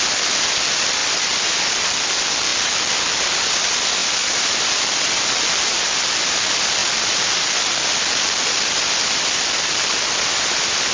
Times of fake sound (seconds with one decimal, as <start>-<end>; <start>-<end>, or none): 1.0-2.1; 4.0-4.8